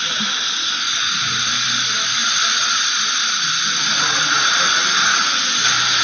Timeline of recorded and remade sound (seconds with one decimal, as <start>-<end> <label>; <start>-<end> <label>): 0.0-2.2 recorded; 2.2-3.5 remade; 3.5-6.0 recorded